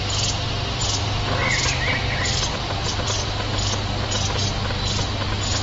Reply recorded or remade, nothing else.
recorded